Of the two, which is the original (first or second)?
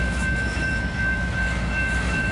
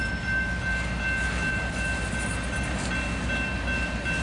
second